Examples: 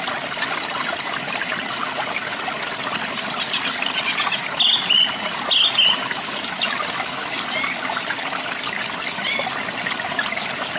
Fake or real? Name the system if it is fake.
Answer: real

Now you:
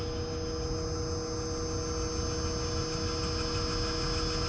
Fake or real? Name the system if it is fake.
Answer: real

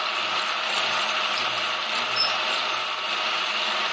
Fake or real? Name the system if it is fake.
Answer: real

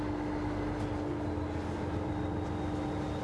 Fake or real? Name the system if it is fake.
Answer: real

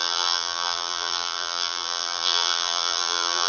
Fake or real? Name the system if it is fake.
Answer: fake, vocoder, BigVGAN v2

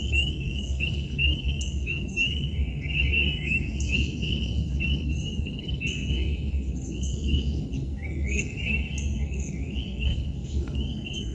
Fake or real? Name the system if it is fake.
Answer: fake, codec, SNAC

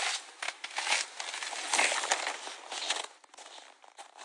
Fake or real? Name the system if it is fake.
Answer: real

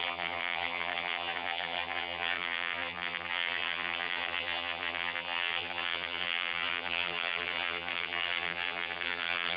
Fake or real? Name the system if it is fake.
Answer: fake, vocoder, BigVGAN v2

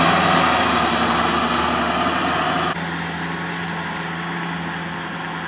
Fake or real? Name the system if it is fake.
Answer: real